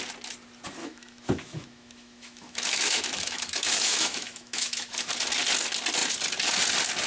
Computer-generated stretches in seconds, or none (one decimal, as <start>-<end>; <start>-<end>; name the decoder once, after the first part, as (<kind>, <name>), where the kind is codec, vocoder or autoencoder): 0.8-5.1 (autoencoder, DAC-VAE)